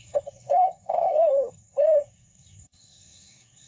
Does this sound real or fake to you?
fake